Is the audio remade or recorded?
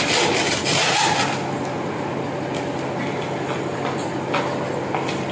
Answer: recorded